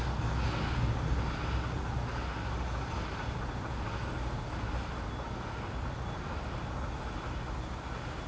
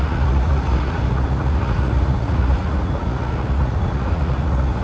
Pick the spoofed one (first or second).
second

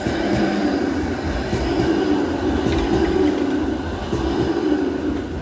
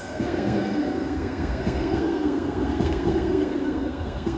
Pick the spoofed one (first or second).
second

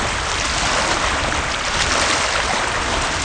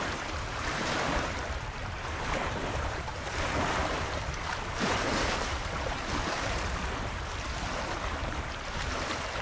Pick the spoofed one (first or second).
second